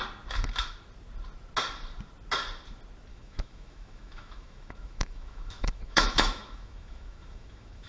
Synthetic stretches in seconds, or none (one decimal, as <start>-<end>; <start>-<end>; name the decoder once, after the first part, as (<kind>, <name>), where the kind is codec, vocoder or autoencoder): 3.1-7.9 (autoencoder, DAC-VAE)